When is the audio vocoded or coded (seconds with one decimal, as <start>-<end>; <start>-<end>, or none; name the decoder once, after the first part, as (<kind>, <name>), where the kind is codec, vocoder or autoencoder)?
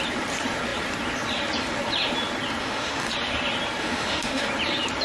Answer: 2.6-3.1 (autoencoder, DAC-VAE); 3.8-4.5